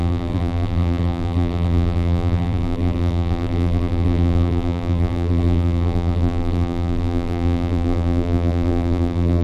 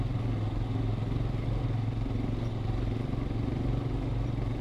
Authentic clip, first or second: second